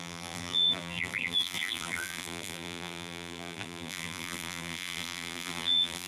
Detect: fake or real fake